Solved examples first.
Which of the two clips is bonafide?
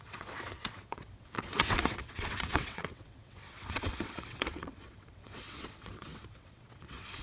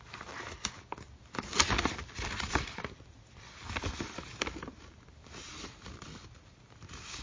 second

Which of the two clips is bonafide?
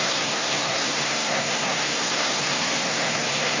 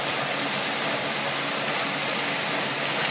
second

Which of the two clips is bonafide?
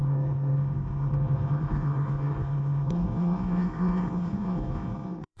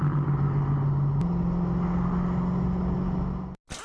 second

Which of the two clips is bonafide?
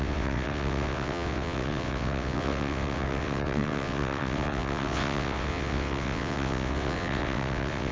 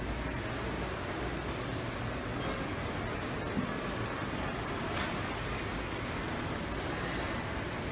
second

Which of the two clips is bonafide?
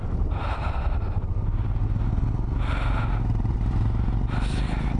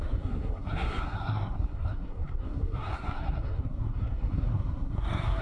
first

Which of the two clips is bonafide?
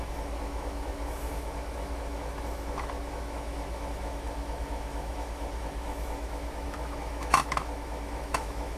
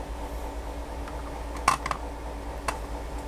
second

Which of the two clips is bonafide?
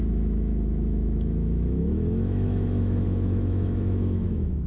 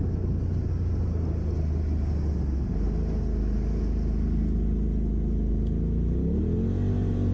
second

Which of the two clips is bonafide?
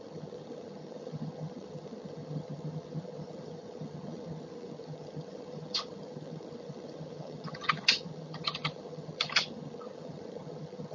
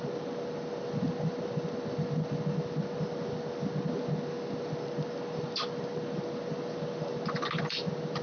second